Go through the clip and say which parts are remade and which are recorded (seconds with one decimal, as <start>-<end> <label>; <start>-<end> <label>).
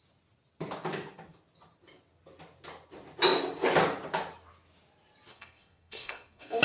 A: 0.0-5.3 recorded; 5.3-6.6 remade